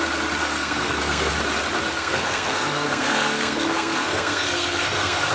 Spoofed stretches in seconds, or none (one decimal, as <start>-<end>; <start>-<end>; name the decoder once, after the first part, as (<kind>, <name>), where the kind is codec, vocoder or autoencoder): 0.4-1.3 (codec, SNAC); 1.9-5.3